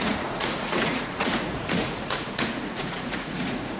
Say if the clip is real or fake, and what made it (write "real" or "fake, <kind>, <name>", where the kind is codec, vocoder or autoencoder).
fake, vocoder, Vocos